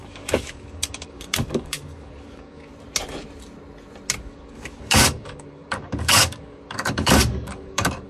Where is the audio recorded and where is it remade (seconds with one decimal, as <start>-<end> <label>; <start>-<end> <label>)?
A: 0.0-2.7 remade; 2.7-4.2 recorded; 4.2-8.1 remade